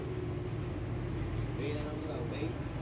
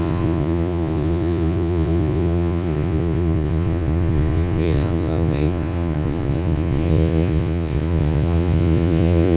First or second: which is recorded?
first